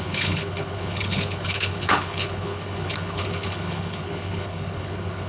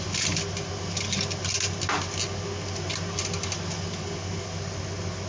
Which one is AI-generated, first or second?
first